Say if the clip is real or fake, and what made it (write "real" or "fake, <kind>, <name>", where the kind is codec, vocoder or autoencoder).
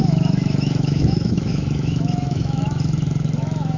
fake, autoencoder, DAC-VAE